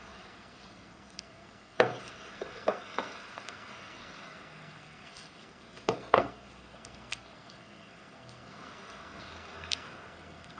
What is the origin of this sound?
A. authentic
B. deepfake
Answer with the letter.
B